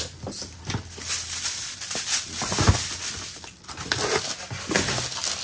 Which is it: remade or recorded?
recorded